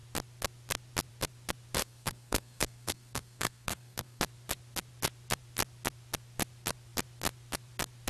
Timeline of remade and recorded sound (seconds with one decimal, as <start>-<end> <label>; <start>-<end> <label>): 0.0-1.8 recorded; 1.8-4.2 remade; 4.2-8.1 recorded

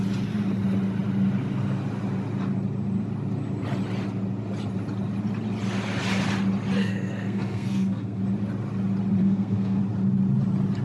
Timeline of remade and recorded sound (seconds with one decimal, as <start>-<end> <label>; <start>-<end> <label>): 0.0-6.8 recorded; 6.8-8.2 remade; 8.2-9.2 recorded; 9.2-9.8 remade; 9.8-10.8 recorded

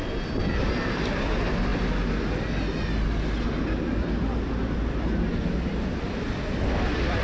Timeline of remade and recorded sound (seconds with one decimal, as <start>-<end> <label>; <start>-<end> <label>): 0.0-7.2 recorded

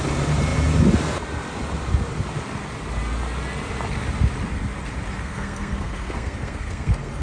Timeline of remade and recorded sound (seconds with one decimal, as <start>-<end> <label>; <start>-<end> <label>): 0.0-5.2 recorded; 5.2-7.2 remade

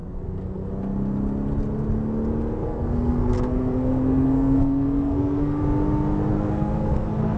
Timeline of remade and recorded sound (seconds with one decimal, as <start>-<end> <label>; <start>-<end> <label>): 0.0-0.7 remade; 0.7-2.6 recorded; 2.6-5.6 remade; 5.6-6.3 recorded; 6.3-7.4 remade